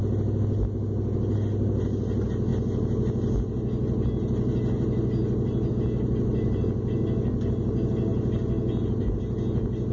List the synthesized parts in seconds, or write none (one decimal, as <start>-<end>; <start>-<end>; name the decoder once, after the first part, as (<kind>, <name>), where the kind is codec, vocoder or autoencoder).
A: none